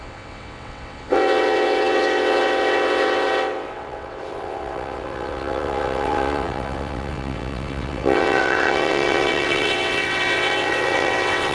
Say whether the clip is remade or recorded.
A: remade